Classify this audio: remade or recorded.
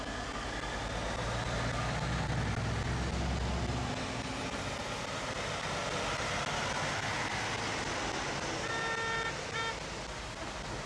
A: recorded